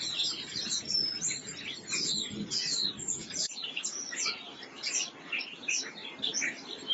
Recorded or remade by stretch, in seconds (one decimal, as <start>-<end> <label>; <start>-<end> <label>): 0.0-6.0 remade; 6.0-6.9 recorded